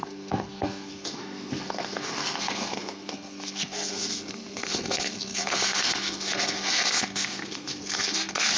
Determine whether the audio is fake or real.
fake